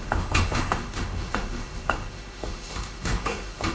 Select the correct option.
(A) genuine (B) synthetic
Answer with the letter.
B